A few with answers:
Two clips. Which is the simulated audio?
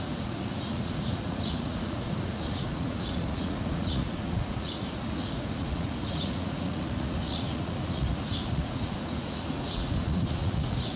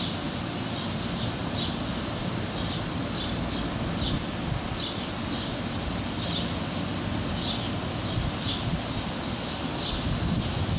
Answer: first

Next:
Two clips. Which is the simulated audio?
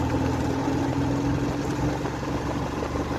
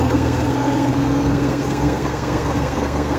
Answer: second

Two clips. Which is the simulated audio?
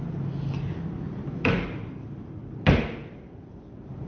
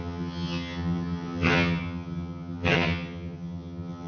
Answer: second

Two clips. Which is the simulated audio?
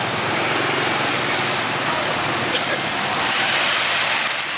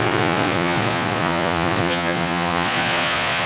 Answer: second